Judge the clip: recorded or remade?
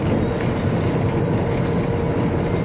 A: recorded